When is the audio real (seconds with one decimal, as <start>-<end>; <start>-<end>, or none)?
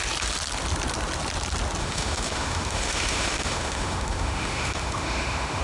0.0-1.8